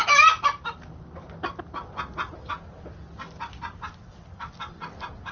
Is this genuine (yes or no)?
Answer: yes